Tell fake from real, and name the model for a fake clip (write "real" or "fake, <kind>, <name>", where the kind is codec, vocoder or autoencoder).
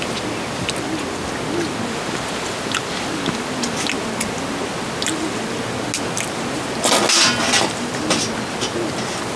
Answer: real